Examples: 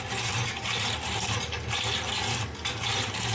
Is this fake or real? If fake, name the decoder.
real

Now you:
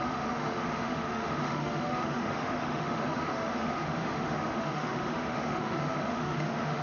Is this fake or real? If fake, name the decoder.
fake, autoencoder, DAC-VAE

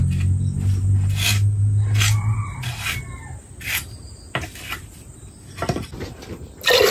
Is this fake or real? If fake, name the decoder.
real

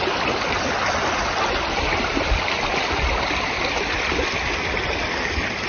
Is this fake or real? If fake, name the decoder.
real